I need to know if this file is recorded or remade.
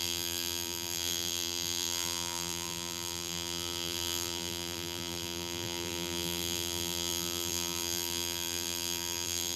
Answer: remade